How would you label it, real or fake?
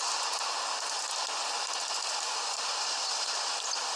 real